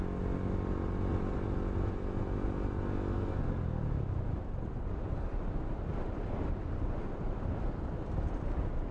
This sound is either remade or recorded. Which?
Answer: recorded